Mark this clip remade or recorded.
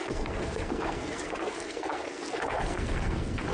remade